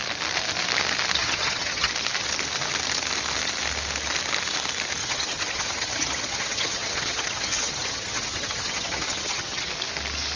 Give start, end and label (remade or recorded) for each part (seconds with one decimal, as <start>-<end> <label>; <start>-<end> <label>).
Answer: 0.0-1.2 recorded; 1.2-1.9 remade; 1.9-5.0 recorded; 5.0-9.7 remade; 9.7-10.4 recorded